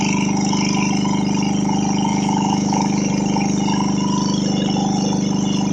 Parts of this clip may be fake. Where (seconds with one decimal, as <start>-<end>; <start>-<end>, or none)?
2.1-3.1